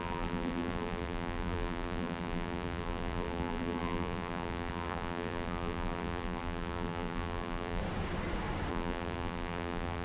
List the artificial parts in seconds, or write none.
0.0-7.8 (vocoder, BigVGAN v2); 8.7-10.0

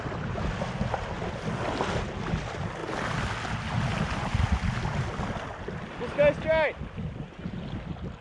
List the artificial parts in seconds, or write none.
none

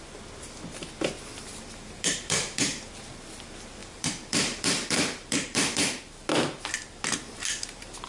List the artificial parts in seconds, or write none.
1.5-2.9 (vocoder, BigVGAN v2); 3.8-8.1

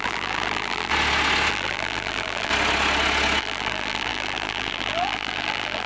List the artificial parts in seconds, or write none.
0.0-0.9 (vocoder, BigVGAN v2); 1.5-2.5; 3.4-5.9

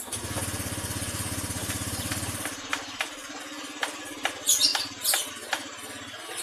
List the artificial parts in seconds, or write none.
1.6-3.4 (vocoder, BigVGAN v2)

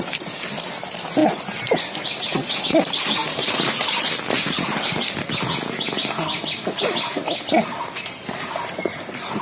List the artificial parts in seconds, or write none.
3.2-3.7 (vocoder, BigVGAN v2)

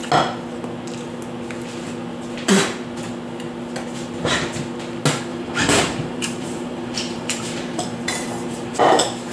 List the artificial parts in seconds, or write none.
5.3-8.8 (vocoder, BigVGAN v2)